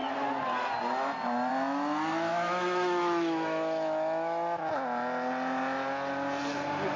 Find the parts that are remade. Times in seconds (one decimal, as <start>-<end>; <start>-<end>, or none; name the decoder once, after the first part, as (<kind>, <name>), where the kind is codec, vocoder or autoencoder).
2.3-4.7 (autoencoder, DAC-VAE)